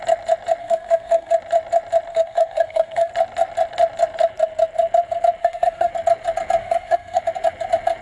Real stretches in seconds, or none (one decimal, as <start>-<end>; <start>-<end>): 0.0-0.6; 1.3-2.1; 3.1-5.4; 5.9-6.6; 7.2-8.0